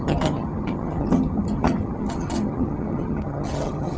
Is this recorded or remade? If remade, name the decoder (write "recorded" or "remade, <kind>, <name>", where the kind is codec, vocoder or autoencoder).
remade, vocoder, HiFi-GAN